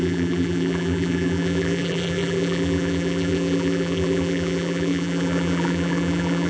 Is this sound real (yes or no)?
no